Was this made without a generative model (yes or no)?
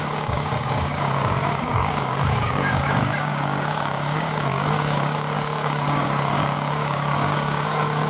no